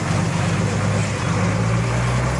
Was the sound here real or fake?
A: real